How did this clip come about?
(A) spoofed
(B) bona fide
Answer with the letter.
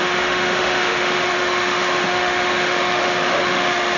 A